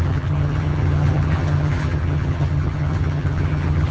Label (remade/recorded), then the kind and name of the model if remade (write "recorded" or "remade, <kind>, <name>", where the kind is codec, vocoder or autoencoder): remade, vocoder, HiFi-GAN